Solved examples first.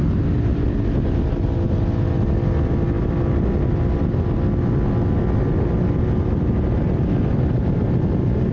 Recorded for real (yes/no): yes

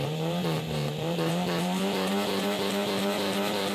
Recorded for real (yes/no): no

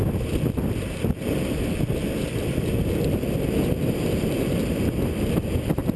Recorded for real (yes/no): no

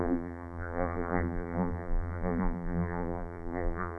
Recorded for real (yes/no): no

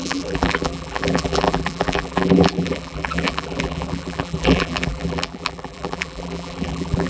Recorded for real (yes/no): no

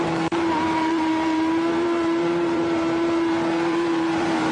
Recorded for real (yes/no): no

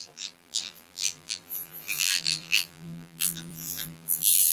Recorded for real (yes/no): no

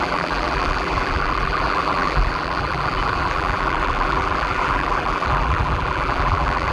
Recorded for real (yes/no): no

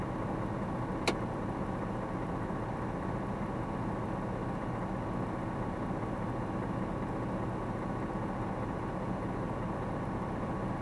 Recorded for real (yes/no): yes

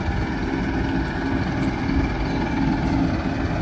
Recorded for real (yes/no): yes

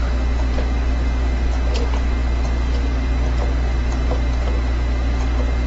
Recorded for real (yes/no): yes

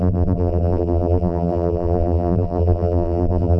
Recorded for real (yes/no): no